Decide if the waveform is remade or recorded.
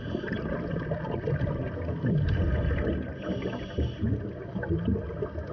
recorded